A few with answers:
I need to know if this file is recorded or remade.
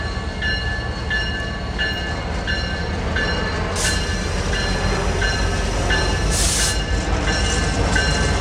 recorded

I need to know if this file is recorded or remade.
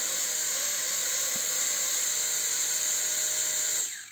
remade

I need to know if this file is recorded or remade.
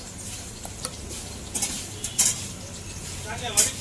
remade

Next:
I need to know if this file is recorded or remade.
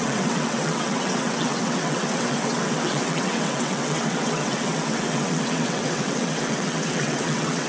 remade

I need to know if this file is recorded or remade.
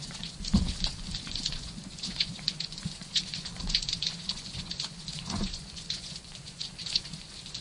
remade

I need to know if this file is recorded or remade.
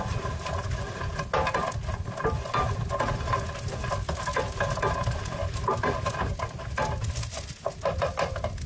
recorded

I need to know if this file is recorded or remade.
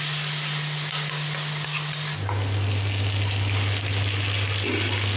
recorded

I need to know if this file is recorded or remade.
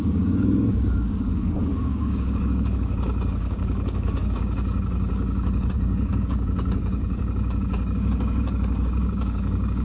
remade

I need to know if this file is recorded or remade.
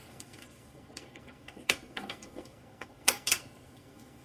remade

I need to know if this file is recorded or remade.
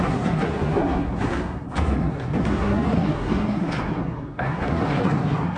remade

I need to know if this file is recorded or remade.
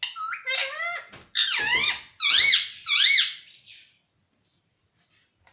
recorded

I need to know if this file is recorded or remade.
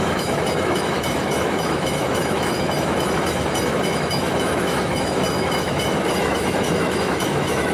remade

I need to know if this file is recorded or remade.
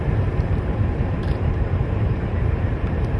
remade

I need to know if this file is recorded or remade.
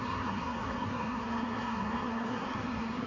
remade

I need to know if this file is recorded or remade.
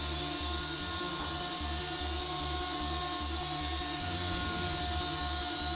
recorded